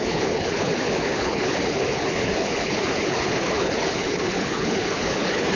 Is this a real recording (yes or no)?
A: no